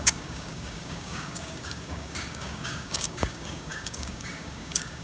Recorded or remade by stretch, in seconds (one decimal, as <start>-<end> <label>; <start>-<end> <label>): 0.0-5.0 remade